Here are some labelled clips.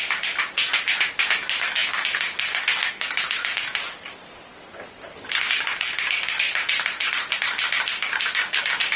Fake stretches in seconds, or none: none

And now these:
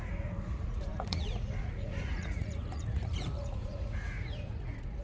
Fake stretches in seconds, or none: 0.0-5.0 (vocoder, Vocos)

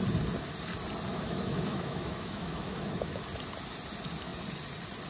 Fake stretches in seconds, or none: 1.1-3.2 (autoencoder, DAC-VAE)

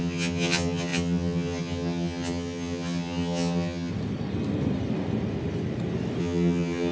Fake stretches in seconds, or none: 0.0-3.9 (vocoder, HiFi-GAN); 6.2-6.9